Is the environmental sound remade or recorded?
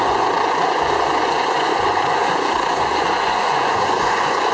remade